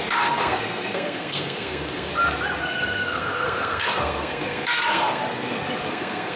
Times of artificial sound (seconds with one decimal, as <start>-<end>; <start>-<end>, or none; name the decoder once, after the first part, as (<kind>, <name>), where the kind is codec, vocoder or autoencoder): 0.0-2.1 (codec, SNAC); 2.6-5.2; 5.8-6.4